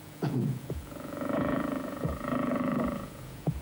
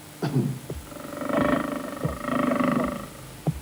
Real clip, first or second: second